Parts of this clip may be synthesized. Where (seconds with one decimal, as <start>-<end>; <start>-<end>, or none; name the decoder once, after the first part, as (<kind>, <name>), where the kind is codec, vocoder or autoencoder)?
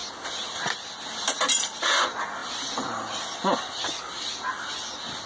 none